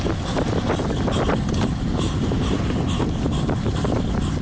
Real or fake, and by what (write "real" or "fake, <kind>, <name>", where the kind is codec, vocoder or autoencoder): real